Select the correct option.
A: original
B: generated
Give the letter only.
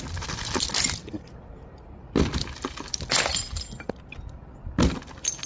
A